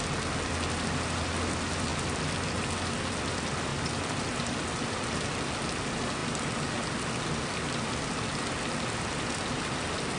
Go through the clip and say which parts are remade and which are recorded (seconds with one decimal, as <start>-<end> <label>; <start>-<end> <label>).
0.0-10.2 recorded